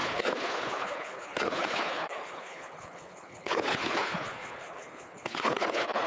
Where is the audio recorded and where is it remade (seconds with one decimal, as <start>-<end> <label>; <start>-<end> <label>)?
0.0-6.1 remade